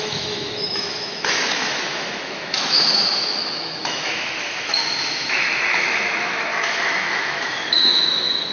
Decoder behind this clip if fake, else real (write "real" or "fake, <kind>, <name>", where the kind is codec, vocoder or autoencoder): fake, autoencoder, DAC-VAE